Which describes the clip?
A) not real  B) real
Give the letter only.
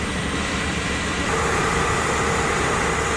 A